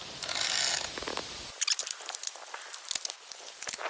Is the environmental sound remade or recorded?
recorded